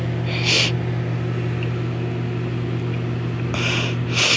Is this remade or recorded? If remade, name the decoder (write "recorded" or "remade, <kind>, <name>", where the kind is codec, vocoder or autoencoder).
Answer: recorded